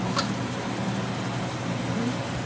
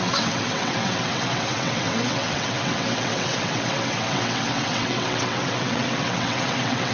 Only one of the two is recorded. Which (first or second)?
first